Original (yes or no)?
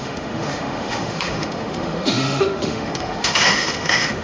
no